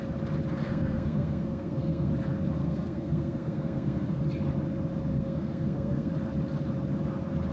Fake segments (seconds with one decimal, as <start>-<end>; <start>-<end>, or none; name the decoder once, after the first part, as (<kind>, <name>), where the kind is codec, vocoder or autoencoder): 0.6-2.1 (codec, SNAC); 2.6-4.2; 5.1-6.1